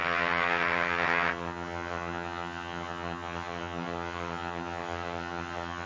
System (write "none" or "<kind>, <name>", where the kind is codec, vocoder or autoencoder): vocoder, HiFi-GAN